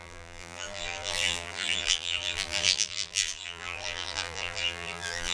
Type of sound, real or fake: fake